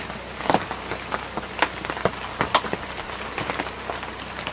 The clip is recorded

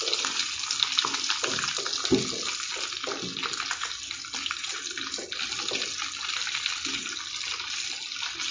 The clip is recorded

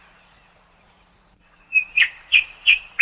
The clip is remade